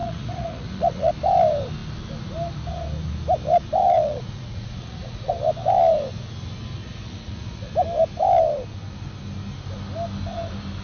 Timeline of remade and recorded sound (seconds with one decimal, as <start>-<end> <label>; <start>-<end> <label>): 0.0-1.1 remade; 1.1-3.8 recorded; 3.8-5.3 remade; 5.3-6.8 recorded; 6.8-7.7 remade; 7.7-10.8 recorded